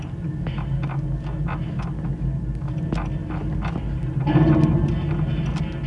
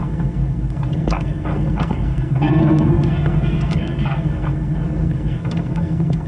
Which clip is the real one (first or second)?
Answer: first